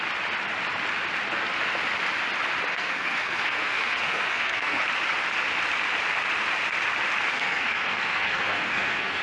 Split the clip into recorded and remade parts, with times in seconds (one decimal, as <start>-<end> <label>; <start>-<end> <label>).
0.0-2.7 recorded; 2.7-4.8 remade; 4.8-7.3 recorded; 7.3-9.2 remade